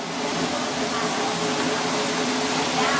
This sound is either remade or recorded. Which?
recorded